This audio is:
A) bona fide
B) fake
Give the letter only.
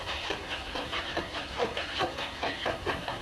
B